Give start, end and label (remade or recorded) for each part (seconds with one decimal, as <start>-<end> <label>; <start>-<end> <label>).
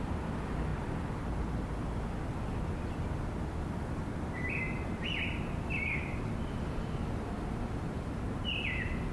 0.0-9.1 recorded